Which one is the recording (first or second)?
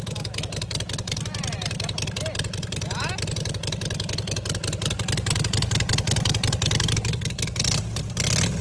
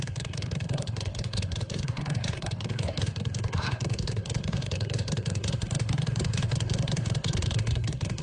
first